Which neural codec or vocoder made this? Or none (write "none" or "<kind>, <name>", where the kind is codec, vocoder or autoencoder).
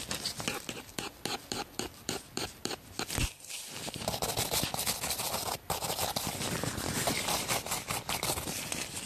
none